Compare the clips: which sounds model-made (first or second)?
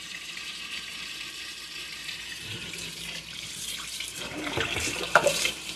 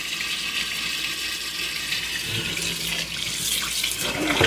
first